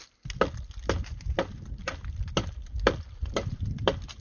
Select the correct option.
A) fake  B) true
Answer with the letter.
B